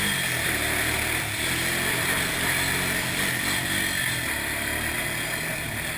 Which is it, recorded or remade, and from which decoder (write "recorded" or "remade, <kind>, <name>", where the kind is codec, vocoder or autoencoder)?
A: recorded